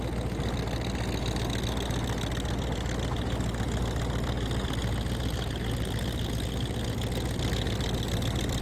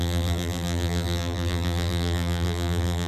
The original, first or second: first